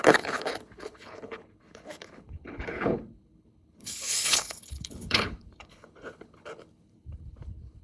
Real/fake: fake